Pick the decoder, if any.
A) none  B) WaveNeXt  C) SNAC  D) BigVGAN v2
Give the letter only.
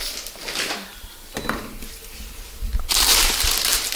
A